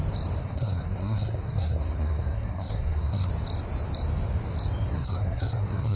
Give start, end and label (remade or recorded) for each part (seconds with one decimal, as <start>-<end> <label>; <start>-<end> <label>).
0.0-0.4 recorded; 0.4-3.3 remade; 3.3-4.9 recorded; 4.9-6.0 remade